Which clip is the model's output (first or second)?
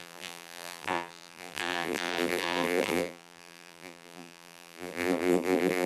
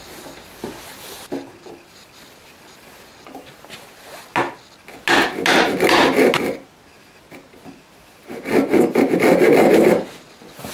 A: first